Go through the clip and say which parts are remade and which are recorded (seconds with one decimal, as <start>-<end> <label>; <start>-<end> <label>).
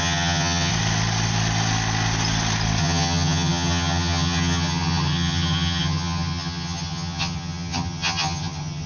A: 0.0-0.7 remade; 0.7-2.8 recorded; 2.8-8.9 remade